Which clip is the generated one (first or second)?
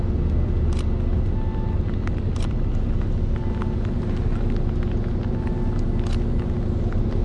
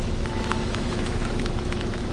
second